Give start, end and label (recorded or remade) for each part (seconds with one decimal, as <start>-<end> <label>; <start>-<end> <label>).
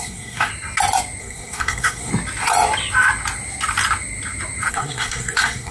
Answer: 0.0-0.5 remade; 0.5-1.2 recorded; 1.2-2.1 remade; 2.1-4.7 recorded; 4.7-5.7 remade